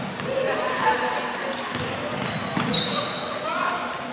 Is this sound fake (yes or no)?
no